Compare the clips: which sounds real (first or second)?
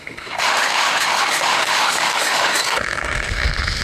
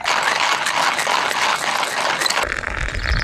second